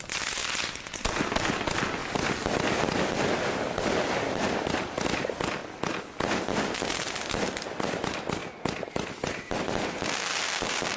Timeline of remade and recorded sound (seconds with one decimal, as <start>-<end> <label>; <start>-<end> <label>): 0.0-0.4 remade; 0.4-1.4 recorded; 1.4-2.0 remade; 2.0-3.0 recorded; 3.0-5.6 remade; 5.6-6.4 recorded; 6.4-8.4 remade; 8.4-8.9 recorded; 8.9-11.0 remade